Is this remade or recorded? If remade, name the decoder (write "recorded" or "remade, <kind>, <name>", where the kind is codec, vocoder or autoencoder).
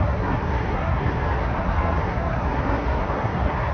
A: remade, codec, SNAC